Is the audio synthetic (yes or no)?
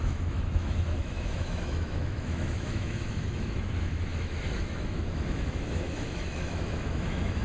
yes